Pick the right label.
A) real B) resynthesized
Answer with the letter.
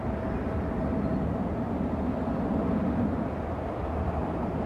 A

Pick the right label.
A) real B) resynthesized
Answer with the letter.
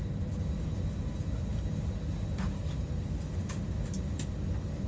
A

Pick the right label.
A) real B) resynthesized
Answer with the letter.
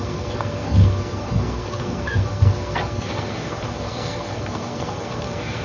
B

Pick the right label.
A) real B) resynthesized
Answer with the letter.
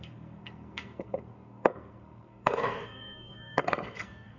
B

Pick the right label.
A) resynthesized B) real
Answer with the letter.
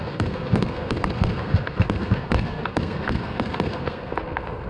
A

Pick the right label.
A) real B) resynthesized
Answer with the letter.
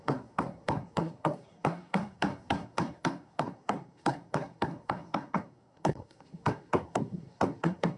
B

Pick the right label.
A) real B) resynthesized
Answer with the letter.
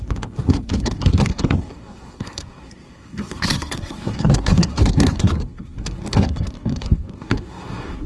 B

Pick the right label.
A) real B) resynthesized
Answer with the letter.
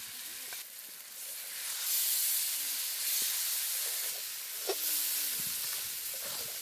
A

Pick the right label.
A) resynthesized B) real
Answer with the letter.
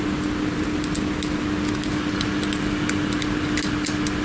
B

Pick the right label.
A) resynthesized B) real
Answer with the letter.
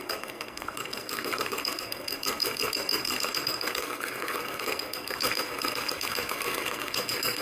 A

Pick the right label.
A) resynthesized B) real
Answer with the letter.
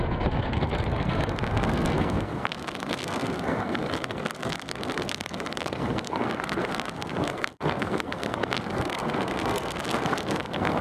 A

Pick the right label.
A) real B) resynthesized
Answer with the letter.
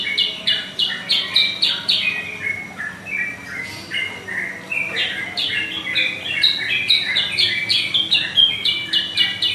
A